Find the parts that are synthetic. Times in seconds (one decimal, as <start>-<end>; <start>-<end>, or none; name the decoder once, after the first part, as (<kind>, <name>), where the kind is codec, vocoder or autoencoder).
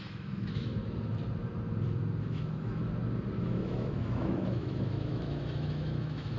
0.0-0.8 (autoencoder, DAC-VAE); 2.2-2.8; 3.4-6.4